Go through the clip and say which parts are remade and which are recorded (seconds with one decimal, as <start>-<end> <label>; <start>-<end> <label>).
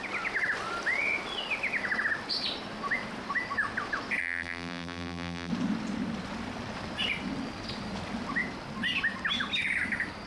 0.0-4.2 recorded; 4.2-5.5 remade; 5.5-10.3 recorded